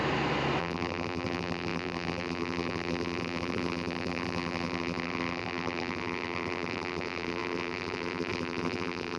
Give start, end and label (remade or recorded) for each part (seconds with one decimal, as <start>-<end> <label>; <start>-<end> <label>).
0.0-0.6 recorded; 0.6-9.2 remade